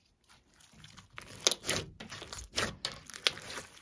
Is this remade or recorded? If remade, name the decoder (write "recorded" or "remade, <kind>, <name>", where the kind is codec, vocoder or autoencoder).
recorded